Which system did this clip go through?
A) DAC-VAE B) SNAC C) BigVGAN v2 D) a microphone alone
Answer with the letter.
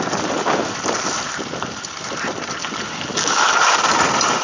C